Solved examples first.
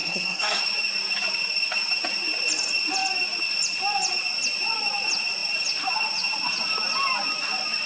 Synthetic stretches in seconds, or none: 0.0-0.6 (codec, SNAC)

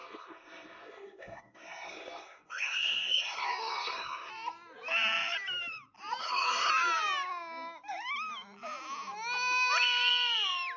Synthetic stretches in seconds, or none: 0.0-4.3 (codec, SNAC); 6.2-6.7

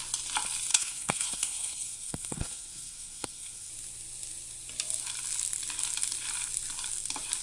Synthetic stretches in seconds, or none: 0.7-3.7 (codec, SNAC)

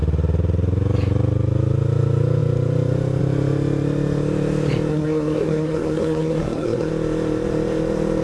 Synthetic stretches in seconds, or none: 4.9-6.9 (codec, SNAC)

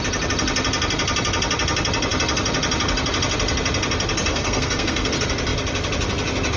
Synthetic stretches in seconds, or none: 4.3-5.1 (codec, SNAC)

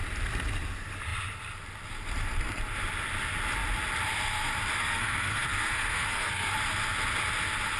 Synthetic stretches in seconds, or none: 4.8-6.5 (codec, SNAC)

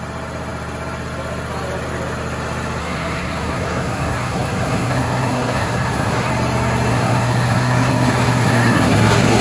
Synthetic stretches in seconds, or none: 2.8-6.3 (codec, SNAC); 6.9-9.4

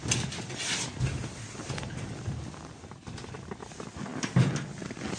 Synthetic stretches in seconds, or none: none